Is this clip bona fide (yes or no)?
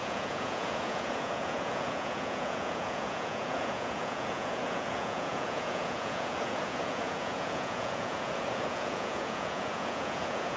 no